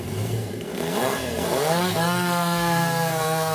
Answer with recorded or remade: remade